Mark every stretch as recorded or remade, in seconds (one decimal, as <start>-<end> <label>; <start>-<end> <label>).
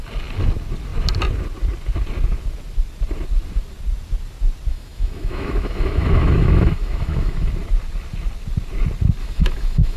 0.0-4.7 recorded; 4.7-7.5 remade; 7.5-9.2 recorded; 9.2-10.0 remade